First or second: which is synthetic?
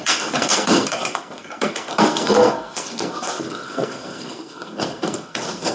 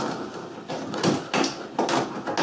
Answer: first